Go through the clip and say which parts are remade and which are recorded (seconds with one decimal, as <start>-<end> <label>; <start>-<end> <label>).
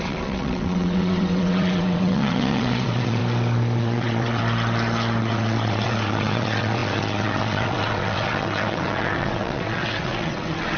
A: 0.0-3.2 remade; 3.2-3.8 recorded; 3.8-4.4 remade; 4.4-5.2 recorded; 5.2-10.8 remade